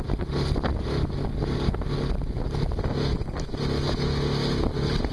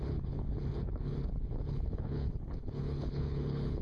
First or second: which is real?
first